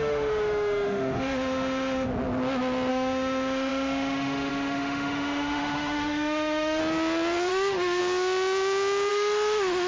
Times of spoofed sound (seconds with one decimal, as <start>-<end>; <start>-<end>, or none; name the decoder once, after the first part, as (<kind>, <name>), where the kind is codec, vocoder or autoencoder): 0.0-2.1 (autoencoder, DAC-VAE); 2.9-6.8; 7.5-8.0; 9.1-9.9